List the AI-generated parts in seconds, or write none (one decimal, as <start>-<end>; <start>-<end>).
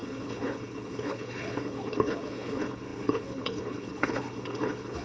0.0-5.0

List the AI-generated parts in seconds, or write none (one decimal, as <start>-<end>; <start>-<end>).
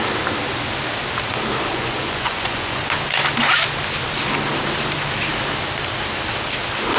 1.7-2.8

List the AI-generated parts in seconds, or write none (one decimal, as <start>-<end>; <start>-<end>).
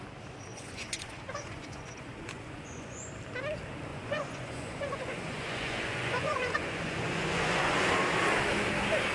0.5-3.1; 3.9-7.9